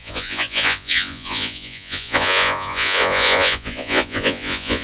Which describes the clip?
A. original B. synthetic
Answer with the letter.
B